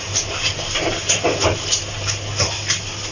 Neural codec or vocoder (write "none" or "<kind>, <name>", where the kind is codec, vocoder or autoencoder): none